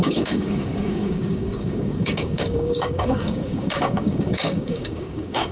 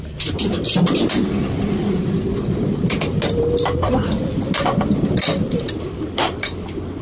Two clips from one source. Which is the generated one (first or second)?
first